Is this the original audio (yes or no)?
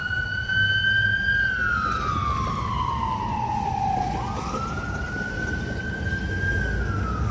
yes